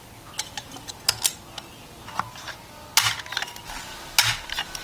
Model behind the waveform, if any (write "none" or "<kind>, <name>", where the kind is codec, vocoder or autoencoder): none